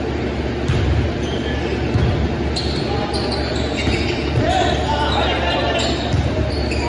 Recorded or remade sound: recorded